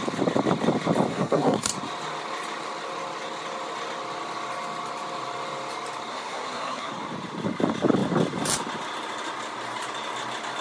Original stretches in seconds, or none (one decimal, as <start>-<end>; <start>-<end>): 0.0-1.1; 1.7-6.1; 6.9-10.6